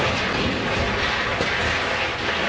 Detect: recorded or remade recorded